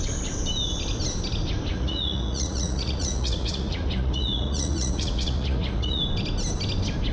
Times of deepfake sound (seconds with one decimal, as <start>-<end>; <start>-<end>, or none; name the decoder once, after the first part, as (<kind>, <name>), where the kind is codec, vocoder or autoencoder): 1.7-6.0 (vocoder, Vocos)